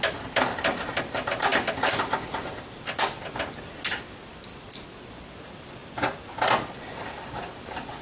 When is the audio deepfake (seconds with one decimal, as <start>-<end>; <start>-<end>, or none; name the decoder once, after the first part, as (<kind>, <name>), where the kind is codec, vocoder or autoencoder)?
4.5-5.1 (vocoder, BigVGAN v2); 5.8-6.8